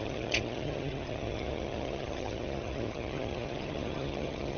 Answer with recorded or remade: remade